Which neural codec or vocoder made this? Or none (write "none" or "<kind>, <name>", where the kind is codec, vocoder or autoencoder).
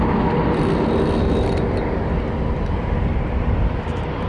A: none